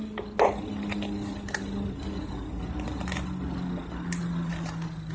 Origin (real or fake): real